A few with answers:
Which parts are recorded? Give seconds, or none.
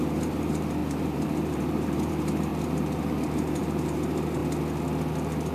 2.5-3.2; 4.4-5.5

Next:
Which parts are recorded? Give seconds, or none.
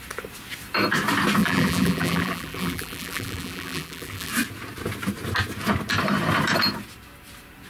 0.0-1.4; 4.3-7.7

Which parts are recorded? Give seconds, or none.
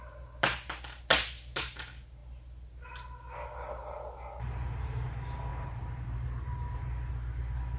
0.0-5.5; 7.1-7.8